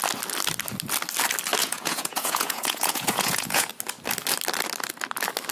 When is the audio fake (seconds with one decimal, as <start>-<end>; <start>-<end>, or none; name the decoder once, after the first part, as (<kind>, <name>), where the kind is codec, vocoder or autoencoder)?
1.6-3.7 (vocoder, Vocos)